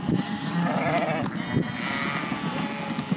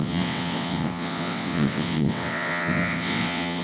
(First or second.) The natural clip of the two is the first